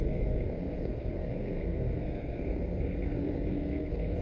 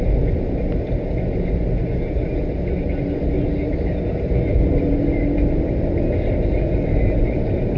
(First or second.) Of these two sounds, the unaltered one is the second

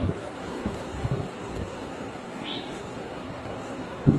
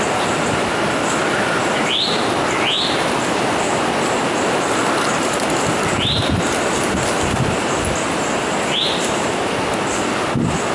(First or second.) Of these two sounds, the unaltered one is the second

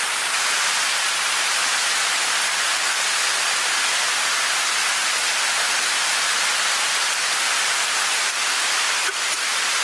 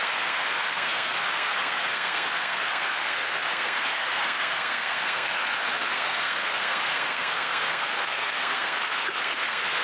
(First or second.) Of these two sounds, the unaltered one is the first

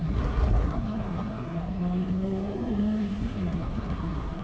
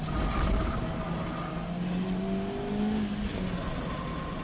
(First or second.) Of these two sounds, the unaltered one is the second